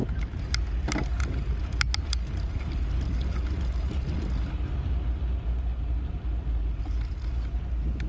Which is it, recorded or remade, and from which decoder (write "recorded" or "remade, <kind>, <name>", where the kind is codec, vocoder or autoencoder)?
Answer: recorded